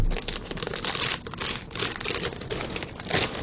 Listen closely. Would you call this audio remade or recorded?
recorded